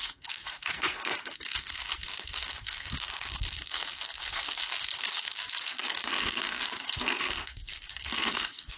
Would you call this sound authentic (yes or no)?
no